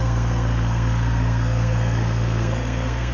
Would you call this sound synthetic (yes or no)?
yes